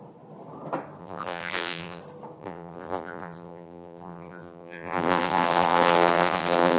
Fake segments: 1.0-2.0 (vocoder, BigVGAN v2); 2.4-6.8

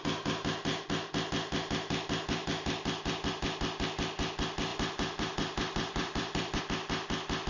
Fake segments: 4.7-6.6 (vocoder, BigVGAN v2)

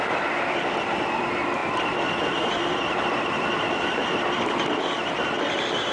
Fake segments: 0.0-5.9 (vocoder, BigVGAN v2)

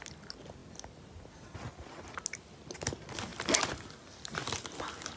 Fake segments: none

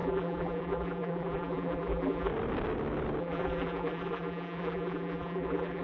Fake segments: 0.0-2.3 (vocoder, BigVGAN v2); 3.2-5.8

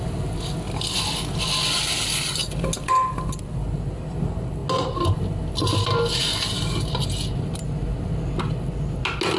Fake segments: none